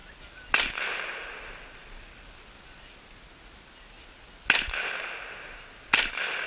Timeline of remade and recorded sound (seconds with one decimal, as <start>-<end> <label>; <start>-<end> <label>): 0.0-6.5 recorded